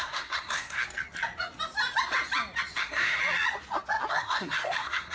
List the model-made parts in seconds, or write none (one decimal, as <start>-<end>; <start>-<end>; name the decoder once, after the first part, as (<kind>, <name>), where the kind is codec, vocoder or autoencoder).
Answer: 0.0-0.8 (codec, SNAC); 2.8-3.2; 4.1-5.1

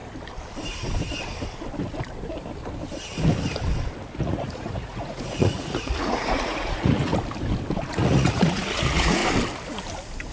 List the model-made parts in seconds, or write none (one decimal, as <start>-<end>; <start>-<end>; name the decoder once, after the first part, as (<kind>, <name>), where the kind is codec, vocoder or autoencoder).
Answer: 4.2-7.1 (vocoder, Vocos); 7.9-9.2

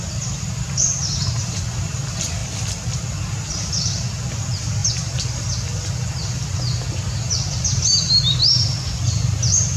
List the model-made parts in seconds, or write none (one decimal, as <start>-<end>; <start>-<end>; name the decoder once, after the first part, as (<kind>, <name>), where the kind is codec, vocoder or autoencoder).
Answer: 4.8-6.1 (vocoder, BigVGAN v2)

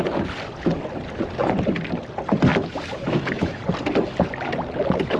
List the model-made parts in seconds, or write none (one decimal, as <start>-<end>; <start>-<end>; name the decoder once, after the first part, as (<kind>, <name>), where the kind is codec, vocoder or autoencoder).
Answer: 2.5-3.6 (autoencoder, DAC-VAE)

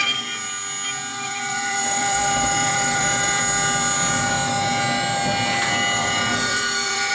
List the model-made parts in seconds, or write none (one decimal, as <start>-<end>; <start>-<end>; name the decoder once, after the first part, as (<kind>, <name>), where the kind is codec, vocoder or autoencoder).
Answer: 1.1-3.4 (vocoder, BigVGAN v2); 6.0-7.1

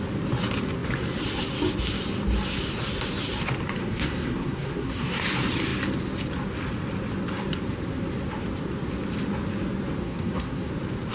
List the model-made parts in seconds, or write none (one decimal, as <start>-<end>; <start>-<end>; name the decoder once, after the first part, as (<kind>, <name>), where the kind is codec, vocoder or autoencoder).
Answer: 3.8-5.2 (codec, SNAC); 10.0-10.7

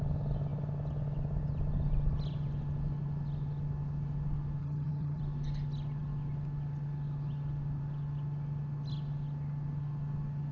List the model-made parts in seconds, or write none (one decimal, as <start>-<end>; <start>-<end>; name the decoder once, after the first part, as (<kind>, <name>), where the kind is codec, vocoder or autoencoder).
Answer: 4.6-5.2 (vocoder, HiFi-GAN)

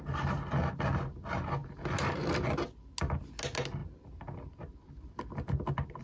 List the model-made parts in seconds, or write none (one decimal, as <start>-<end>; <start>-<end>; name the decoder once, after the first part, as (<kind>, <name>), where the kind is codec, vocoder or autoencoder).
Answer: none